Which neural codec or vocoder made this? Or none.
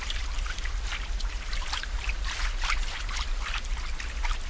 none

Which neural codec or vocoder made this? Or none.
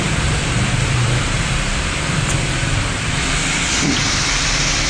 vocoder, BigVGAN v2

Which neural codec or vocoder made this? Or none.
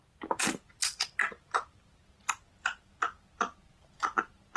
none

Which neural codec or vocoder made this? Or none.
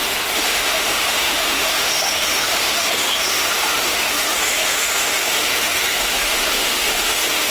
autoencoder, DAC-VAE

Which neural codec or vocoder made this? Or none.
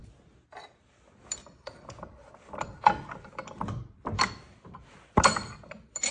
vocoder, BigVGAN v2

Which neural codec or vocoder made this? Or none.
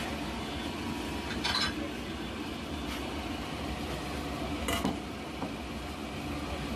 none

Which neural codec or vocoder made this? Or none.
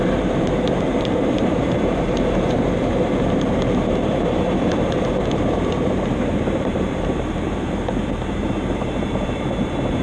vocoder, BigVGAN v2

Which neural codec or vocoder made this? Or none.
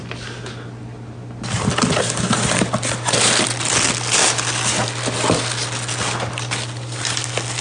none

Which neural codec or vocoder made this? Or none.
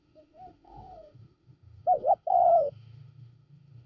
autoencoder, DAC-VAE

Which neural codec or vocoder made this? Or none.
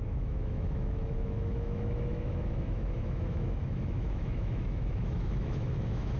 autoencoder, DAC-VAE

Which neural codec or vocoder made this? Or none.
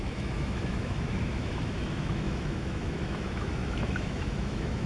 autoencoder, DAC-VAE